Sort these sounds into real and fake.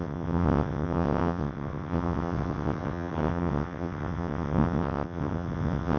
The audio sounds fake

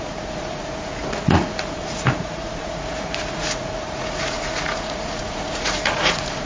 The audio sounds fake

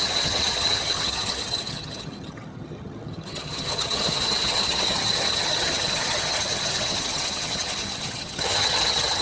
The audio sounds fake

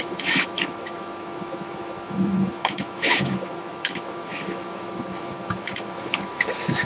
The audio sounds fake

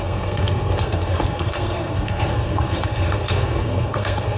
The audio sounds fake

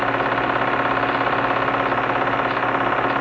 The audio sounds real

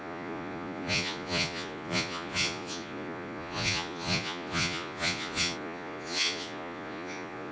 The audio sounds fake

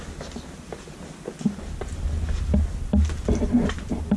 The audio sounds real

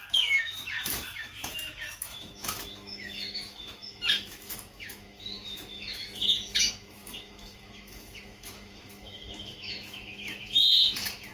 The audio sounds fake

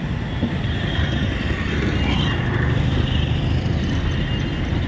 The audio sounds real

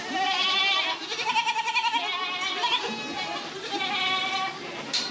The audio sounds real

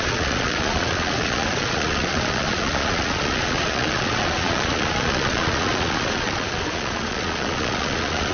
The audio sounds fake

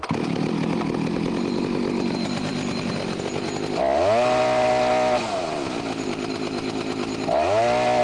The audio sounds real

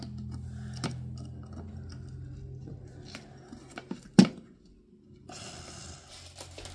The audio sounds real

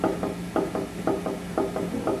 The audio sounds real